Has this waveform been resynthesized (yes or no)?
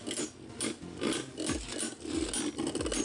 no